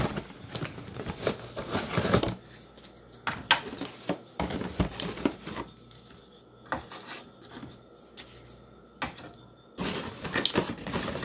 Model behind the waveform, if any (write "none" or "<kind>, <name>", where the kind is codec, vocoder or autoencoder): none